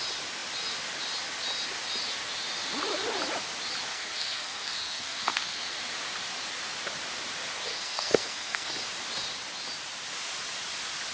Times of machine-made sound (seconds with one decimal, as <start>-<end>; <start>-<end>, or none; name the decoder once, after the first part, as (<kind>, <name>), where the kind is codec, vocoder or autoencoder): 3.9-5.8 (codec, SNAC); 7.7-8.7